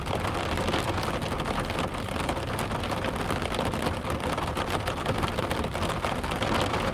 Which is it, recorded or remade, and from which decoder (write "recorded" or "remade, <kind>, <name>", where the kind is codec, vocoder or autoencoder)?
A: recorded